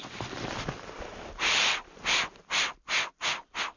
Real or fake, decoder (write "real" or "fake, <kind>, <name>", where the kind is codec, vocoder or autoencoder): real